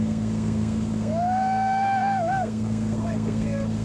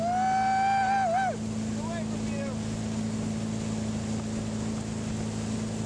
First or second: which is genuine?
second